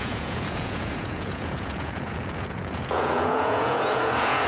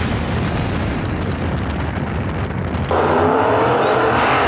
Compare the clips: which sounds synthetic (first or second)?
first